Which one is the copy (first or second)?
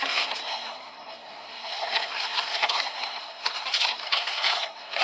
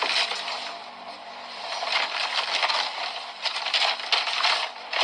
first